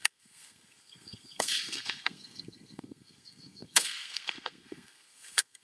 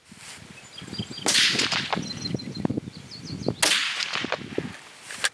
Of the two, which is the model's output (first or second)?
first